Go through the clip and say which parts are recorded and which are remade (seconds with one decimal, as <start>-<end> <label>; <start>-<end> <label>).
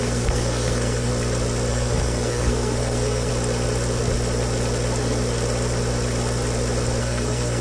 0.0-1.1 remade; 1.1-1.7 recorded; 1.7-3.3 remade; 3.3-7.0 recorded; 7.0-7.6 remade